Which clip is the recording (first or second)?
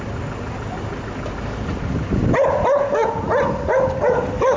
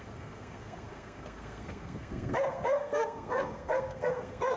first